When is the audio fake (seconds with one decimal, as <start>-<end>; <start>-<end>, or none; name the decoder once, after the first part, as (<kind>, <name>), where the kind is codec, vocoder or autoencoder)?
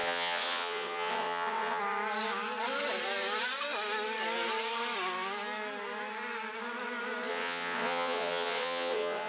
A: 0.0-1.8 (vocoder, WaveNeXt); 7.3-9.3